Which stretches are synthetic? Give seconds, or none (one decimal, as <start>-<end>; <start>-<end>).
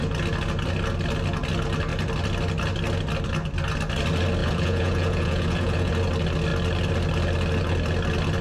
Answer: 4.4-5.9